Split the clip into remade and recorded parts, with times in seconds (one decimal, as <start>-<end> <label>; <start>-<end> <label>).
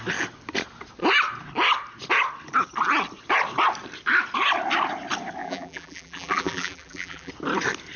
0.0-5.4 recorded; 5.4-7.3 remade; 7.3-8.0 recorded